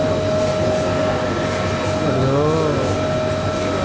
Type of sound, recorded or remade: recorded